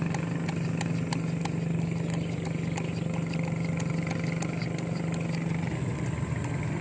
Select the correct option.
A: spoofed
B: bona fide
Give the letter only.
B